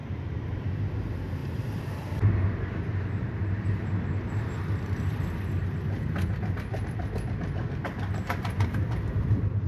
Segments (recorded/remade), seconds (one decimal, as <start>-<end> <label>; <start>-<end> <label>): 0.0-0.8 remade; 0.8-1.4 recorded; 1.4-3.3 remade; 3.3-9.7 recorded

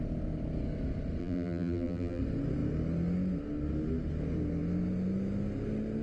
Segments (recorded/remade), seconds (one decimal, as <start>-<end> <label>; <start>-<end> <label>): 0.0-1.2 recorded; 1.2-2.2 remade; 2.2-6.0 recorded

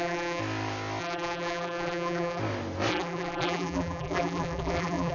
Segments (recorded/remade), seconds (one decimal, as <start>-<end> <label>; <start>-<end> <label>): 0.0-0.4 remade; 0.4-1.0 recorded; 1.0-2.4 remade; 2.4-2.9 recorded; 2.9-5.1 remade